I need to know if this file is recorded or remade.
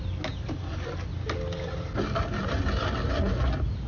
recorded